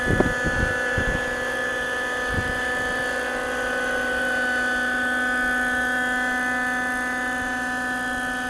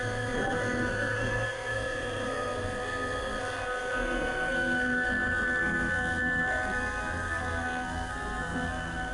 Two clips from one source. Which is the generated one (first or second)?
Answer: second